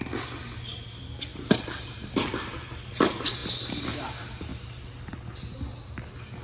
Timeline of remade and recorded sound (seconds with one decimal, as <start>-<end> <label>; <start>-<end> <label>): 0.0-1.3 recorded; 1.3-2.6 remade; 2.6-6.4 recorded